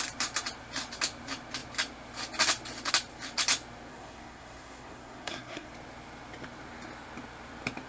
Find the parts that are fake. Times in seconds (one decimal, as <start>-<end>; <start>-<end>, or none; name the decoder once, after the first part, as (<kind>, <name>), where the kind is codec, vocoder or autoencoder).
3.9-5.7 (codec, SNAC)

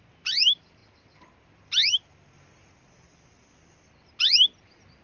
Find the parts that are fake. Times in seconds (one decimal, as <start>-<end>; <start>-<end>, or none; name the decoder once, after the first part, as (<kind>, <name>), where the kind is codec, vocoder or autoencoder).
none

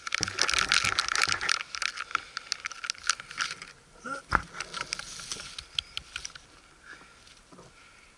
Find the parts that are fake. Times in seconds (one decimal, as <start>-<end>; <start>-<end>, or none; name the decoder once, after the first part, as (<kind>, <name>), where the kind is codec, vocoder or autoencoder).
none